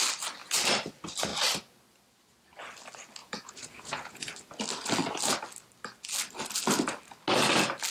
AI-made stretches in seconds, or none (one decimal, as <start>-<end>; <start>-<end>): 3.2-4.3